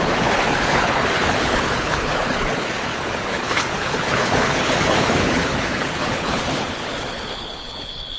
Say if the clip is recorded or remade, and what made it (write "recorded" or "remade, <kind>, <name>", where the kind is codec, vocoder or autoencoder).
remade, codec, HILCodec